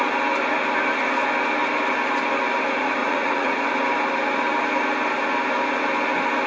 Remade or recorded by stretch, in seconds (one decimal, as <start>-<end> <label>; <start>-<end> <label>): 0.0-3.0 recorded; 3.0-3.7 remade; 3.7-6.5 recorded

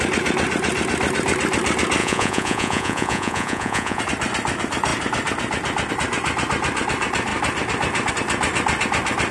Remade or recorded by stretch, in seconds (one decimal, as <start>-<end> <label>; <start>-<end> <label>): 0.0-2.0 recorded; 2.0-4.0 remade; 4.0-9.3 recorded

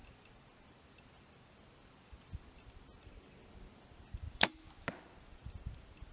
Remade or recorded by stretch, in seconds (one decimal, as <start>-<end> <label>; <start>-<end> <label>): 0.0-6.1 recorded

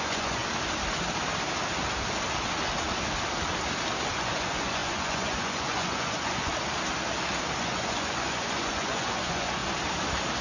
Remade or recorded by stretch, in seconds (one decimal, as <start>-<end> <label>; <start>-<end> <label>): 0.0-0.4 remade; 0.4-4.1 recorded; 4.1-6.5 remade; 6.5-7.6 recorded; 7.6-9.6 remade; 9.6-10.4 recorded

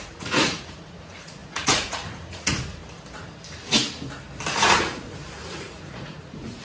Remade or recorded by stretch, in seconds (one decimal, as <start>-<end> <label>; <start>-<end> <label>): 0.0-2.8 remade; 2.8-4.5 recorded; 4.5-6.6 remade

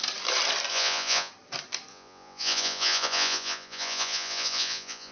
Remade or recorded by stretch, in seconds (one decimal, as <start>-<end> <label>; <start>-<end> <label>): 0.0-0.7 recorded; 0.7-1.3 remade; 1.3-1.9 recorded; 1.9-5.1 remade